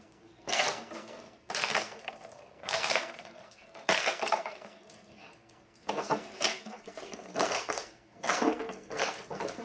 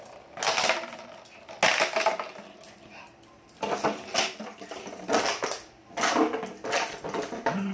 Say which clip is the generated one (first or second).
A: first